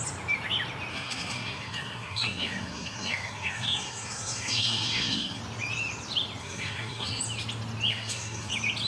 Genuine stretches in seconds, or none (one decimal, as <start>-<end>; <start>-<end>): 0.0-0.9; 5.4-6.4; 7.2-7.9; 8.5-8.9